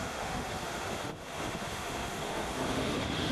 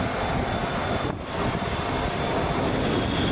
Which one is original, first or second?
second